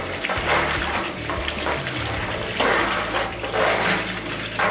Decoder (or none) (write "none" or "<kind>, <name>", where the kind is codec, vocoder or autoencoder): none